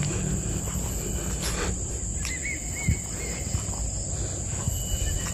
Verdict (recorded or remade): recorded